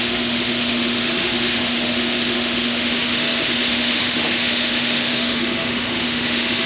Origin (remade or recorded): remade